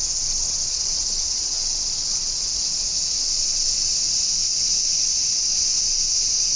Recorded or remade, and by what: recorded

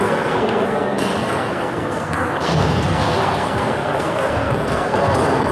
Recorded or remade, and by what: remade, codec, SNAC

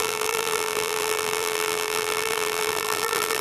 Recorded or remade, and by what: remade, vocoder, BigVGAN v2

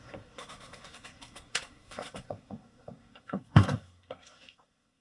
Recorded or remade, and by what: remade, codec, SNAC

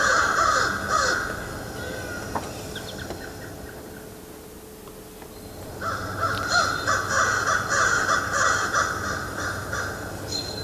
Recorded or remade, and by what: recorded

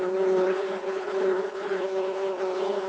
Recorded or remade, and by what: remade, codec, HILCodec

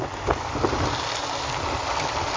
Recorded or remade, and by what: recorded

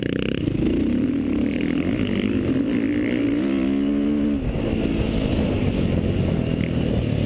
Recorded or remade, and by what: recorded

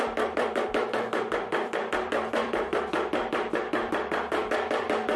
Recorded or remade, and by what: remade, vocoder, BigVGAN v2